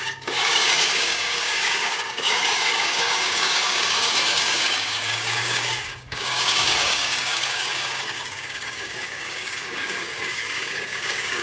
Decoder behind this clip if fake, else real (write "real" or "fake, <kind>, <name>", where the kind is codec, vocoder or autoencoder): fake, codec, DAC